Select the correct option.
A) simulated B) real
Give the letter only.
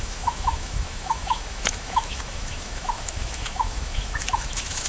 A